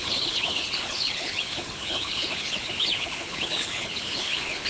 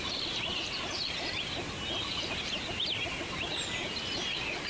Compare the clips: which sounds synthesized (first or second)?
first